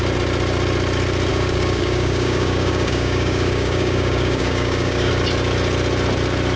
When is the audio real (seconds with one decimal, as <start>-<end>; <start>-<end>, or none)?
0.0-1.3; 5.1-6.6